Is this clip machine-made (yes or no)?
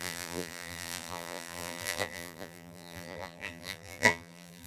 yes